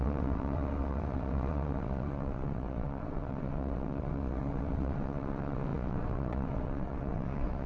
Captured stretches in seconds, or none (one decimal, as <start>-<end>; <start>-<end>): none